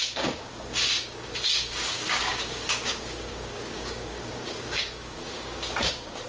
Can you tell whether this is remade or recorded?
remade